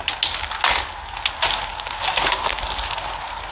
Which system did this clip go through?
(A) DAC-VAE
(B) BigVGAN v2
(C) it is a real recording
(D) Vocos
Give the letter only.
C